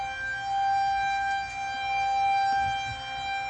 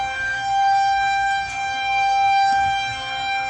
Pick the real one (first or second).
first